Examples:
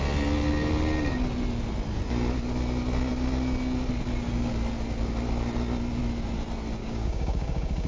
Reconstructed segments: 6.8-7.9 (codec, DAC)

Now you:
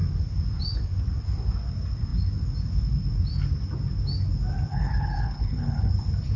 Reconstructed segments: 4.7-5.9 (codec, HILCodec)

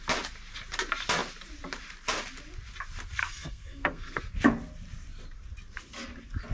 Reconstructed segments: 3.2-4.2 (codec, SNAC)

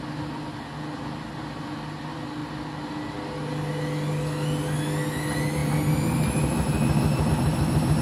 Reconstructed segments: none

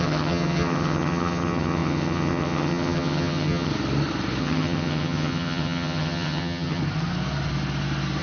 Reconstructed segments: 0.0-3.7 (vocoder, HiFi-GAN); 4.4-6.8

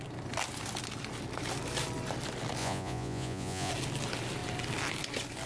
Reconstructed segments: 2.6-3.7 (vocoder, Vocos)

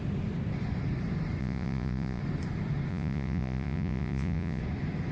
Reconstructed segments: 1.4-2.2 (vocoder, Vocos); 2.9-4.6

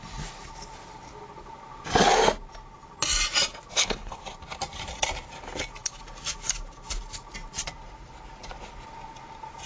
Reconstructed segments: 3.7-4.2 (codec, HILCodec)